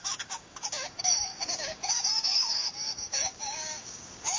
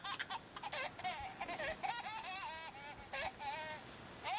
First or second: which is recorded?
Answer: second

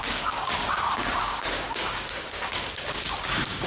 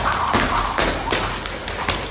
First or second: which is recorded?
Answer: second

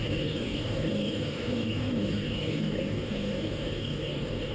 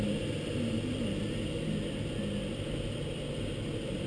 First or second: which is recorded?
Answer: second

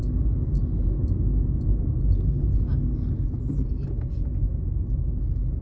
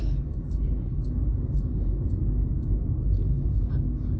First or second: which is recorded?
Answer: first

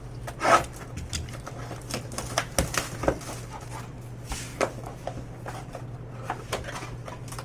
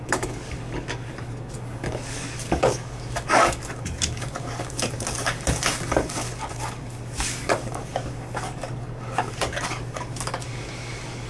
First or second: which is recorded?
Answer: first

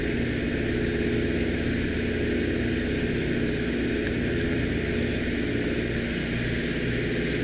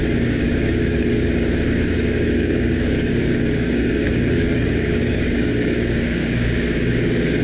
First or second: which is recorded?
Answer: first